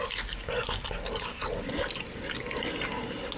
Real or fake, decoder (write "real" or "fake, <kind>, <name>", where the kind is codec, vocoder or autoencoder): real